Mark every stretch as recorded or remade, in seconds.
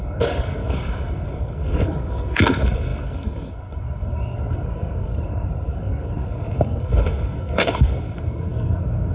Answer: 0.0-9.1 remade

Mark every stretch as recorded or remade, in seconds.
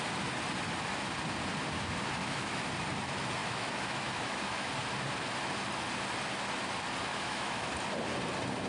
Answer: 0.0-2.2 recorded; 2.2-2.7 remade; 2.7-3.4 recorded; 3.4-4.7 remade; 4.7-7.1 recorded; 7.1-7.7 remade; 7.7-8.7 recorded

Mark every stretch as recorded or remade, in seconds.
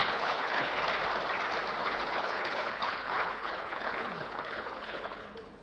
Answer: 0.0-0.7 remade; 0.7-1.8 recorded; 1.8-5.6 remade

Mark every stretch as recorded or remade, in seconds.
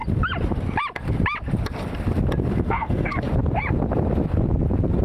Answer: 0.0-2.5 recorded; 2.5-3.2 remade; 3.2-5.0 recorded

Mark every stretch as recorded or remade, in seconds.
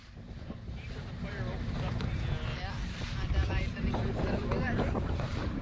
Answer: 0.0-2.1 remade; 2.1-3.4 recorded; 3.4-5.6 remade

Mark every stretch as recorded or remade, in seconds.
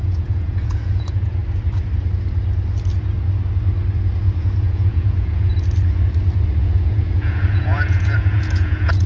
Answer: 0.0-1.4 remade; 1.4-4.4 recorded; 4.4-5.5 remade; 5.5-6.6 recorded; 6.6-9.1 remade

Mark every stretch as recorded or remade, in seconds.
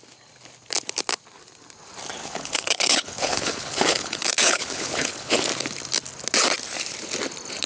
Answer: 0.0-2.2 recorded; 2.2-5.4 remade; 5.4-7.7 recorded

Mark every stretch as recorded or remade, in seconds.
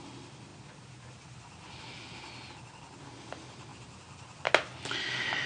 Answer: 0.0-3.7 recorded; 3.7-4.5 remade; 4.5-5.5 recorded